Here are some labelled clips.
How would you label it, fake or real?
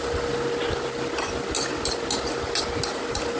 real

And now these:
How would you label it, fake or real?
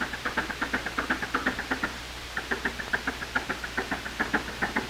real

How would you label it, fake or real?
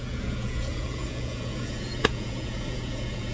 fake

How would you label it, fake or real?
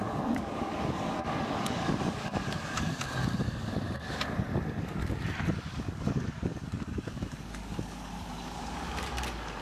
fake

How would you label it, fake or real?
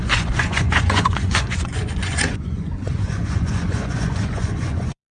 fake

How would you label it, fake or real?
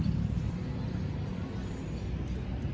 real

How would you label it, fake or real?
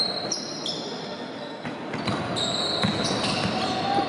real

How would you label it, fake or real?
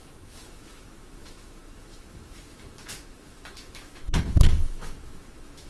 fake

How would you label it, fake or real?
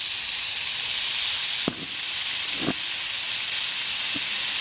real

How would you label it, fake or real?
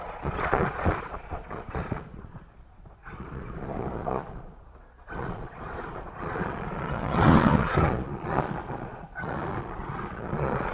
fake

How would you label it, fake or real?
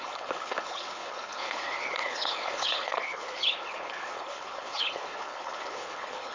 fake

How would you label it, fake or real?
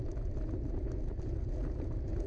real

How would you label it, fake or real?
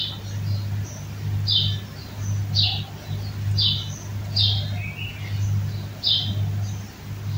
real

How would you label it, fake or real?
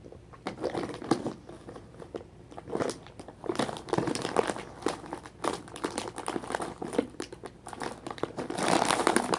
fake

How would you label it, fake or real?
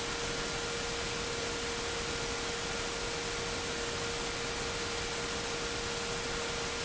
real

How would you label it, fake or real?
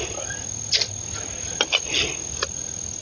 real